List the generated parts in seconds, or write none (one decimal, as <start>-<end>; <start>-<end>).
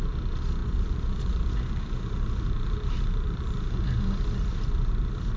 0.6-3.8